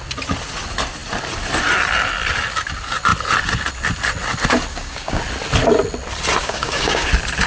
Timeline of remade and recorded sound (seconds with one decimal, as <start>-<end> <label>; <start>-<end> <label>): 0.0-4.7 recorded; 4.7-5.2 remade; 5.2-6.4 recorded; 6.4-7.1 remade; 7.1-7.5 recorded